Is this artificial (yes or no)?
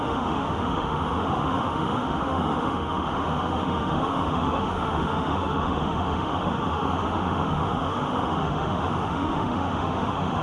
yes